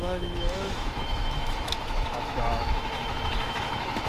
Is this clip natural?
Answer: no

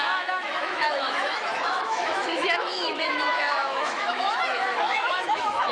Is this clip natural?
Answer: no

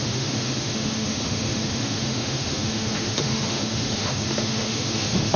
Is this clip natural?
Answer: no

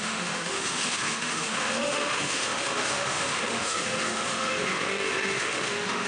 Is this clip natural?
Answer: no